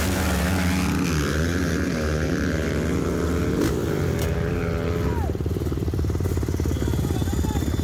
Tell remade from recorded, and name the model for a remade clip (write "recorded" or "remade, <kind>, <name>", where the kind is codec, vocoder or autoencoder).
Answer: recorded